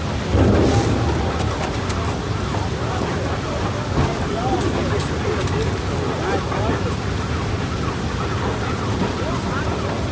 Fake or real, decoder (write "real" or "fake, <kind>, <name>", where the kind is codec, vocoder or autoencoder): real